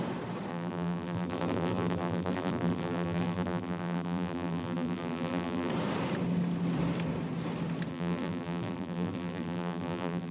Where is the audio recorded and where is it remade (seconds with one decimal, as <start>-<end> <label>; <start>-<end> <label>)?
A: 0.0-0.5 recorded; 0.5-5.7 remade; 5.7-7.9 recorded; 7.9-10.3 remade